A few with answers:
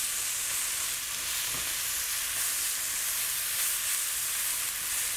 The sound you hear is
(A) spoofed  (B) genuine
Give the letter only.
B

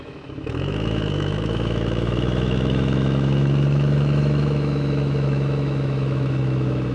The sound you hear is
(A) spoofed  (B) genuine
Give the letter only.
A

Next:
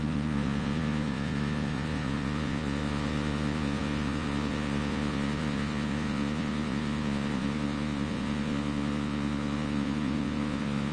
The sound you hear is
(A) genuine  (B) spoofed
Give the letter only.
B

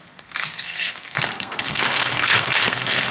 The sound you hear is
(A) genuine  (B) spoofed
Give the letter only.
B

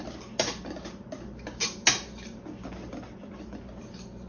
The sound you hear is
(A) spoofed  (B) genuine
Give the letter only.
B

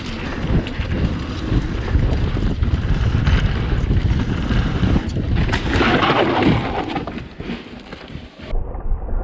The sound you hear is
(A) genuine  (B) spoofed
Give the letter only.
A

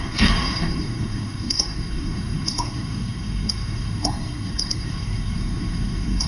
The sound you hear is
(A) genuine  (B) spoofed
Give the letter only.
B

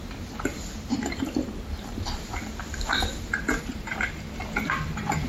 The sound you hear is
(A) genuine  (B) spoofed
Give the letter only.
B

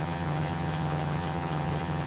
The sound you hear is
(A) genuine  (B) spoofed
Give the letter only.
B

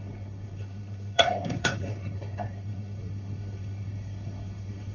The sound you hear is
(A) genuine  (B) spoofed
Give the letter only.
B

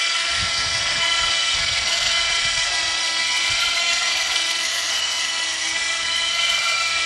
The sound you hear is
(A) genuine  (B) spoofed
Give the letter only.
B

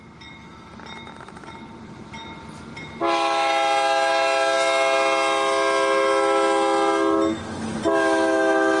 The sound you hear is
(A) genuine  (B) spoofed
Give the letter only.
A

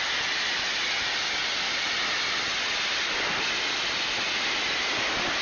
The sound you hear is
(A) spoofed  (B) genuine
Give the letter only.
B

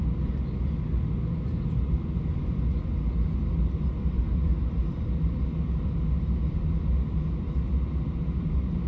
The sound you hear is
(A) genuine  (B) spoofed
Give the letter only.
A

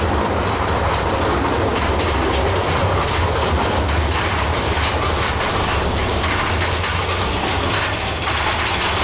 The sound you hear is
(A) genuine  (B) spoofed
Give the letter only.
A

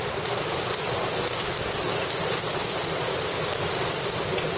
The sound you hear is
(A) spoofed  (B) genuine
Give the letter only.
B